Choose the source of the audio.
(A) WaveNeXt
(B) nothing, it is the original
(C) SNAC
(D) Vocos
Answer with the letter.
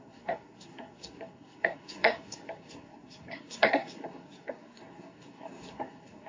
C